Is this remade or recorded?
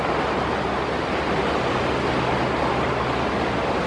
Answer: recorded